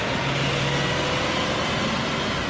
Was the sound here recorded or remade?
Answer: recorded